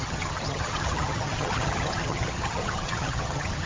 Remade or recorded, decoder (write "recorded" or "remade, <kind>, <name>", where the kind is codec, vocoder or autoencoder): remade, vocoder, HiFi-GAN